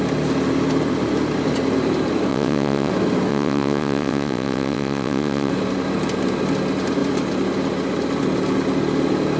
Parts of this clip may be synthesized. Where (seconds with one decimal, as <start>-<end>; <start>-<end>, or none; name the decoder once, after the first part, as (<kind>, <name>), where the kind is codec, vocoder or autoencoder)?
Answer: 2.3-2.9 (vocoder, WaveNeXt); 3.3-5.5